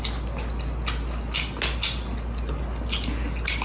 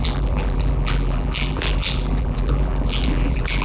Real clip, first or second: first